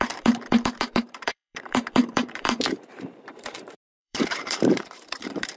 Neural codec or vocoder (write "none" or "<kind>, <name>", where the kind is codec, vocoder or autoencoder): vocoder, BigVGAN v2